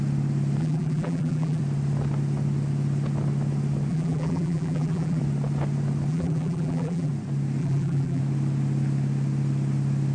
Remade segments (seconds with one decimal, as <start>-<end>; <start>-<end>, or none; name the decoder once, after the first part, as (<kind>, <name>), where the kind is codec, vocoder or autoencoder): 0.6-1.6 (vocoder, BigVGAN v2); 3.9-5.2; 6.1-7.1; 7.6-8.2